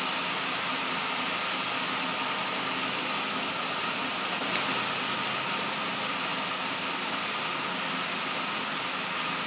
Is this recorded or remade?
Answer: recorded